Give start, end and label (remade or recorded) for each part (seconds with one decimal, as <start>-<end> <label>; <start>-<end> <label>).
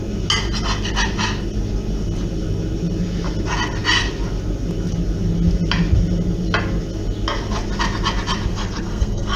0.0-8.5 recorded; 8.5-9.4 remade